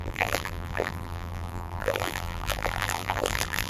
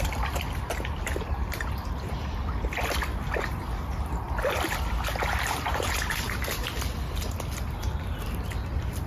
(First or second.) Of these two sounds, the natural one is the second